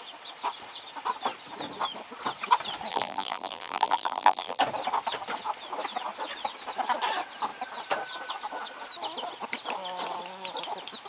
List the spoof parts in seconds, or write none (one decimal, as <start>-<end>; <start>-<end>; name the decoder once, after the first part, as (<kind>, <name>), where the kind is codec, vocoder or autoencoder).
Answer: 2.9-4.6 (vocoder, BigVGAN v2)